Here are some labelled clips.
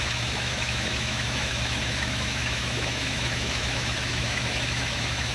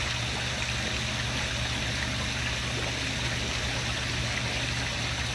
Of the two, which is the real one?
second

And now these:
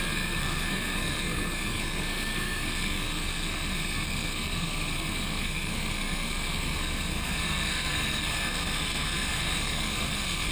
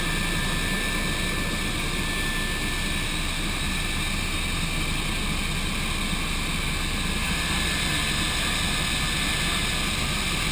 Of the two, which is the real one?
second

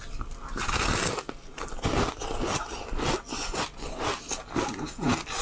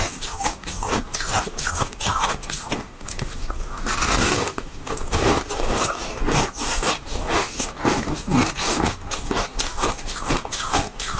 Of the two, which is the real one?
first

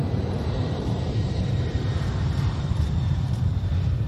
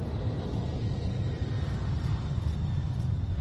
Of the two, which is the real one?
second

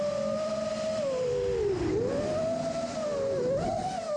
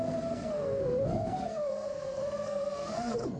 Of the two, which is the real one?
first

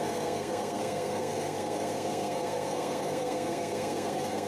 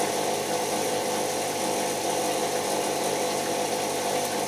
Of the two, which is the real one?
second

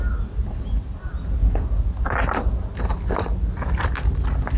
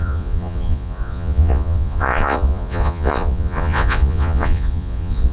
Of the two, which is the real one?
first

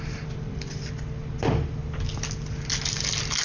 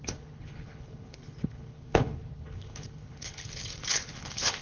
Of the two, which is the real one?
first